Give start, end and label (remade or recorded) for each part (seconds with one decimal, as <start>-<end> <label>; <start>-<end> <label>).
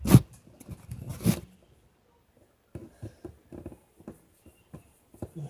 0.0-5.5 recorded